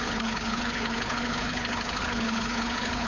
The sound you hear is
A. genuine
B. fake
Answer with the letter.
B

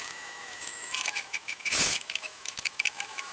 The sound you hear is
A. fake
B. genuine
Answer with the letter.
A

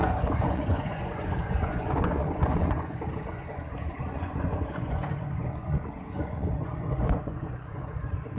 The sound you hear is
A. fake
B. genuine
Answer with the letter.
A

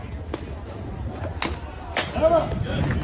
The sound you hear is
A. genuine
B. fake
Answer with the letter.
A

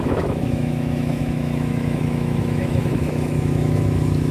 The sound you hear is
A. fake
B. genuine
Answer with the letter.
A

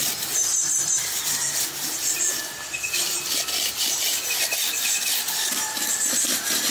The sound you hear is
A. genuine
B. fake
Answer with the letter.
A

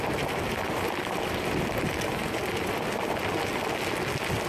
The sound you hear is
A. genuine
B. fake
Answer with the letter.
A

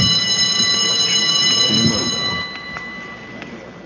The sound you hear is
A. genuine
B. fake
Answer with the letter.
B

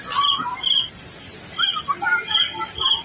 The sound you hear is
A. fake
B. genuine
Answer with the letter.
B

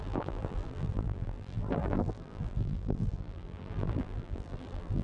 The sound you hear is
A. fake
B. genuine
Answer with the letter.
A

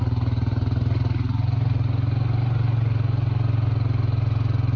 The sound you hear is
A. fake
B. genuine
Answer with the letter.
B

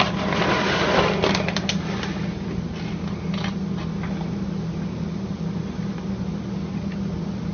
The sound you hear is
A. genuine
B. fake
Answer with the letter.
A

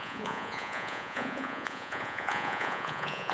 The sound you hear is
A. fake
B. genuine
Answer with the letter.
A